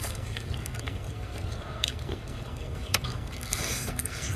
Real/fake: fake